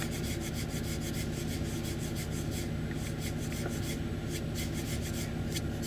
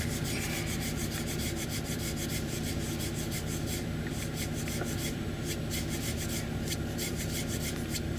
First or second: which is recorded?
first